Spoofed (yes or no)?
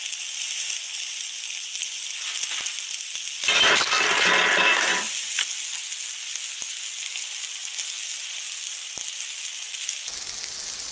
no